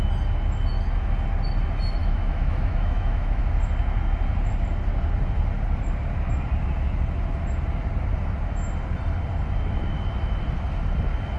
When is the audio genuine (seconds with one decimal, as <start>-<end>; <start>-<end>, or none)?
0.0-2.0; 3.4-11.4